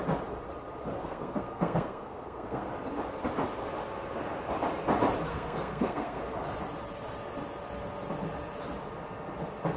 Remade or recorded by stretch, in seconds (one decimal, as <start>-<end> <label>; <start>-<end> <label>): 0.0-1.0 recorded; 1.0-2.7 remade; 2.7-5.3 recorded; 5.3-6.2 remade; 6.2-9.8 recorded

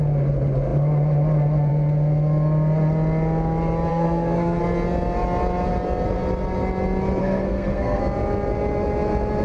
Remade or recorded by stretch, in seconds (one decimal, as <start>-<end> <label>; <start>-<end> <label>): 0.0-3.9 recorded; 3.9-4.6 remade; 4.6-7.2 recorded; 7.2-8.0 remade; 8.0-9.4 recorded

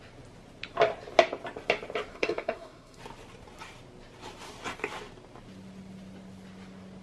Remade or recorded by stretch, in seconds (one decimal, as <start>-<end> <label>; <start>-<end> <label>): 0.0-2.1 recorded; 2.1-3.0 remade; 3.0-7.0 recorded

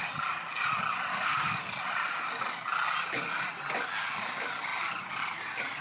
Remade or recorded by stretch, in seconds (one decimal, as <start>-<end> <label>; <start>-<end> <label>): 0.0-1.1 recorded; 1.1-1.7 remade; 1.7-5.8 recorded

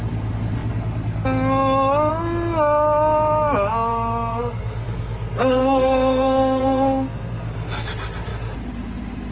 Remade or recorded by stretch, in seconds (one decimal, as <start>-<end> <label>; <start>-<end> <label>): 0.0-3.7 recorded; 3.7-7.9 remade; 7.9-9.3 recorded

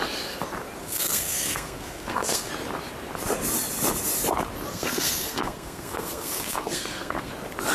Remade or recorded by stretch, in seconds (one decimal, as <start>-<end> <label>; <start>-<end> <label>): 0.0-0.8 recorded; 0.8-2.5 remade; 2.5-4.7 recorded; 4.7-7.3 remade; 7.3-7.7 recorded

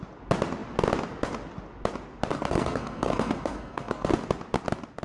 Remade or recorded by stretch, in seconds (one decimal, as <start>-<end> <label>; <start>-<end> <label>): 0.0-2.3 recorded; 2.3-4.1 remade; 4.1-5.0 recorded

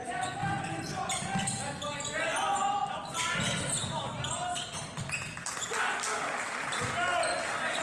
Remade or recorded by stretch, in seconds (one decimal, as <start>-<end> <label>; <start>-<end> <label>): 0.0-7.8 recorded